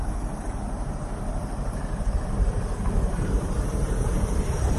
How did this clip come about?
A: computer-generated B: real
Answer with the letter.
A